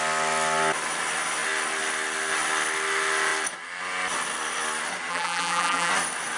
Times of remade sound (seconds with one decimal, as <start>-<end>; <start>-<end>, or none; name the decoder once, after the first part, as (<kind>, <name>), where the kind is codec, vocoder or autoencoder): 5.1-5.9 (vocoder, BigVGAN v2)